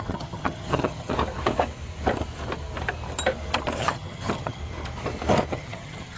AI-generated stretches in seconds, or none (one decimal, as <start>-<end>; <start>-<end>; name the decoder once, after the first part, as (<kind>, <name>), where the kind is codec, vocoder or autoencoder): 0.0-1.1 (vocoder, HiFi-GAN); 3.8-4.6; 5.5-6.2